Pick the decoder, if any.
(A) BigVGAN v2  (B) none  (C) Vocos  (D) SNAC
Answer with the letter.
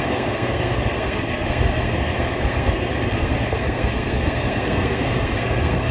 D